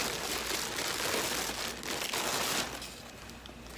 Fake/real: real